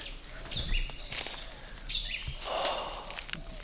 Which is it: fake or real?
real